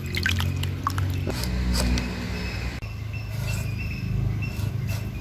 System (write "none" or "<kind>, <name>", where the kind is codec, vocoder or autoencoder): none